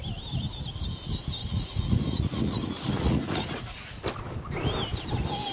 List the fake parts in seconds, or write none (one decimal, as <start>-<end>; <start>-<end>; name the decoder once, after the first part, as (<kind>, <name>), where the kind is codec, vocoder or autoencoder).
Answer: 1.4-4.0 (vocoder, Vocos)